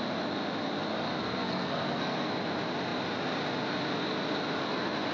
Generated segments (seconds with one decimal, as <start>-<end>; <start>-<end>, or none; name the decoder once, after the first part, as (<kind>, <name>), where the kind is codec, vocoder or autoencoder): 1.2-2.4 (codec, SNAC)